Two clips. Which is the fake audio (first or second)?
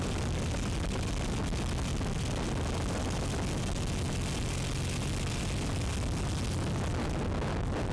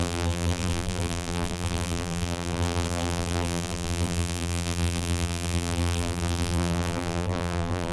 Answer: second